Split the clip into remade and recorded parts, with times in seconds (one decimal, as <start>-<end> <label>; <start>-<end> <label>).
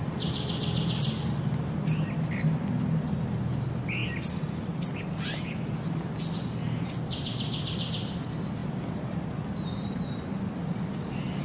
0.0-11.4 recorded